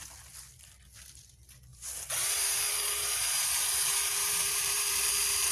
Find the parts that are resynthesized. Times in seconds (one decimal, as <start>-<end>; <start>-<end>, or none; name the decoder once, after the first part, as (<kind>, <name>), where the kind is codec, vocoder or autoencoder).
1.7-5.0 (vocoder, BigVGAN v2)